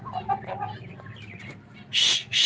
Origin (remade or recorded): recorded